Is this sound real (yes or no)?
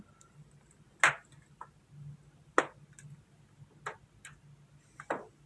yes